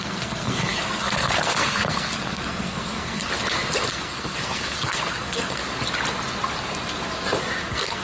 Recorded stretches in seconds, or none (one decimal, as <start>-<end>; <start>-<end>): 3.3-3.9; 5.6-7.6

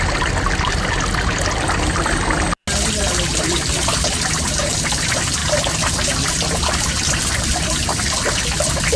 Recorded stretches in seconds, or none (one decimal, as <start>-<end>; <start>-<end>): 0.0-9.0

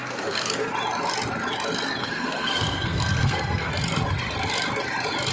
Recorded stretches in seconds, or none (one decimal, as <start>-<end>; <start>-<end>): 0.7-2.0; 3.7-5.3

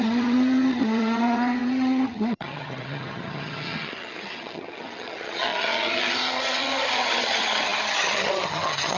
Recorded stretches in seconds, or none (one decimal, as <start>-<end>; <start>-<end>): none